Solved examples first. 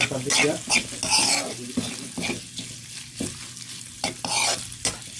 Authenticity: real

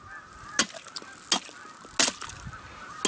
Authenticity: real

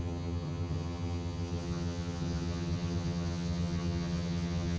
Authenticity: fake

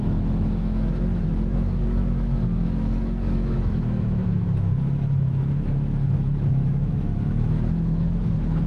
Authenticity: fake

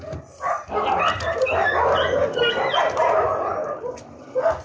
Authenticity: real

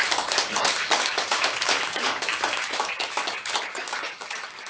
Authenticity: fake